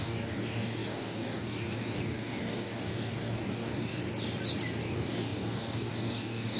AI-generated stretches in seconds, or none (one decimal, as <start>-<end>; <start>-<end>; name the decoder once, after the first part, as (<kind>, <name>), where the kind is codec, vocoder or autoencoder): 0.0-4.0 (codec, DAC); 4.8-6.6

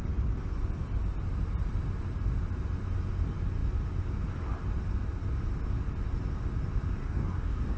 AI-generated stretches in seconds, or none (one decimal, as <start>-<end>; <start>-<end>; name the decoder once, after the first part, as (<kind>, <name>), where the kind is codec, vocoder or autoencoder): 7.0-7.8 (codec, DAC)